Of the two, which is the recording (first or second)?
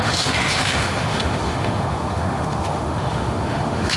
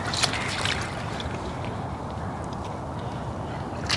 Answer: second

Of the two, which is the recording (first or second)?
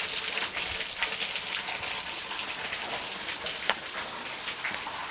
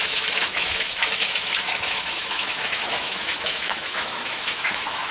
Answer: first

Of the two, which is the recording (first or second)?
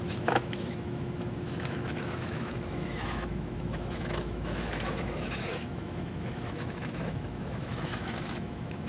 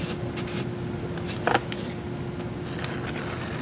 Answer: second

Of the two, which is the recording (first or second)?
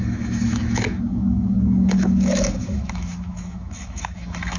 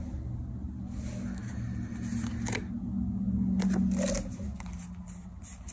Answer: second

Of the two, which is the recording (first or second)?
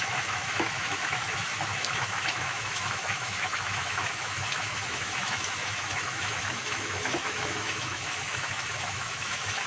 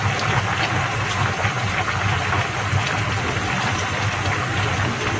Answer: second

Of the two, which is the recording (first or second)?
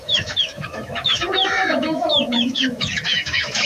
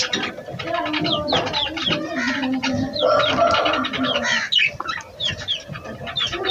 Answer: second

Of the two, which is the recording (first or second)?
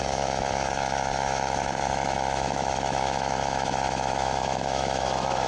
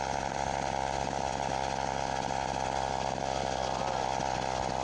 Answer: second